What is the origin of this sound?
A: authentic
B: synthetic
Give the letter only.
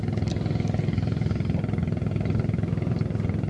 A